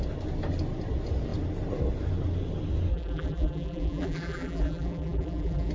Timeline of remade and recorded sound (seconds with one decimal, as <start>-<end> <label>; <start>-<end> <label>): 0.0-2.9 recorded; 2.9-5.7 remade